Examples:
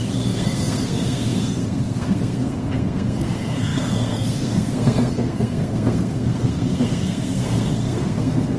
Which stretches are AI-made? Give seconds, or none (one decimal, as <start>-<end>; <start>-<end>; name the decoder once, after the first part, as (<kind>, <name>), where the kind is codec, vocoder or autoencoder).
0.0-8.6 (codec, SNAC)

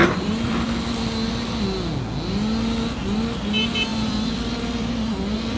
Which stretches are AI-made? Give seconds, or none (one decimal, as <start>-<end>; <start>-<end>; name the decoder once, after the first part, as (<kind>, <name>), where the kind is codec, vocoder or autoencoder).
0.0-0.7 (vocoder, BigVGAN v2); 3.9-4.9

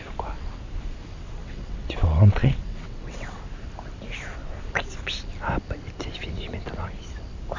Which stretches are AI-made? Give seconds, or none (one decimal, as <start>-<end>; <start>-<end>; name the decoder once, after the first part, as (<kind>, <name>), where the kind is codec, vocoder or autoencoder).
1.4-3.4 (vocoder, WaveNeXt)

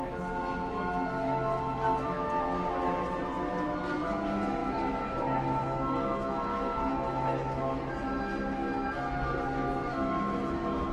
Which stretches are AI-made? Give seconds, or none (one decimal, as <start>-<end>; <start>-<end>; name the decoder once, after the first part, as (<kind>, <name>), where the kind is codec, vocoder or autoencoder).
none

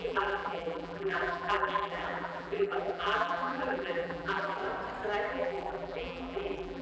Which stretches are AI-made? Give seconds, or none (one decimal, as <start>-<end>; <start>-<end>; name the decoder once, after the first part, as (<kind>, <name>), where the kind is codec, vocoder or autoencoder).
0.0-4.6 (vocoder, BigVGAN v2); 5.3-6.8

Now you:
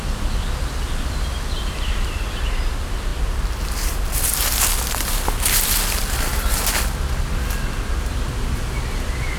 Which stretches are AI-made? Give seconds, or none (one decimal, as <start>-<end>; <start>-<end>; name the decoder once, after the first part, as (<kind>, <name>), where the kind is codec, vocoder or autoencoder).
none

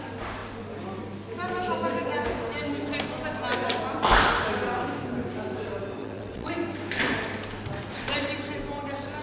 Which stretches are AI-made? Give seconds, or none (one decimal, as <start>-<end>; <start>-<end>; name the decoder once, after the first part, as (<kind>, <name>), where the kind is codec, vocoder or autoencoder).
6.0-6.5 (vocoder, WaveNeXt)